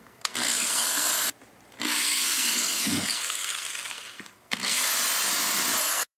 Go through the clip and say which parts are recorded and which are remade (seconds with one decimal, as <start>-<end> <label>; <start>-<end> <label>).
0.0-1.1 remade; 1.1-1.8 recorded; 1.8-4.9 remade; 4.9-5.8 recorded; 5.8-6.2 remade

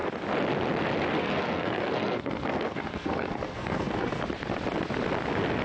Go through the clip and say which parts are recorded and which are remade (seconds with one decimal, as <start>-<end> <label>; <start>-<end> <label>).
0.0-1.2 recorded; 1.2-4.2 remade; 4.2-5.6 recorded

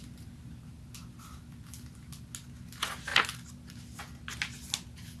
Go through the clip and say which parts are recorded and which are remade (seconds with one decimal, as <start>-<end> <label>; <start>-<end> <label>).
0.0-5.2 recorded

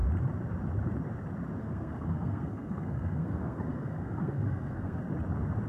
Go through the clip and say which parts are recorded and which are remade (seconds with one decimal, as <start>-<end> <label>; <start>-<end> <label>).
0.0-1.6 recorded; 1.6-5.0 remade; 5.0-5.7 recorded

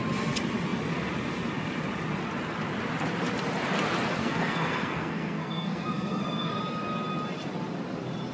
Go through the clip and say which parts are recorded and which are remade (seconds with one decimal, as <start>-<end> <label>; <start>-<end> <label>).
0.0-4.2 recorded; 4.2-6.6 remade; 6.6-8.3 recorded